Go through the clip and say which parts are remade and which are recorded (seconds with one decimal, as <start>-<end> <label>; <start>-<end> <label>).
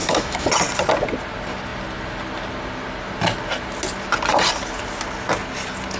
0.0-0.5 remade; 0.5-6.0 recorded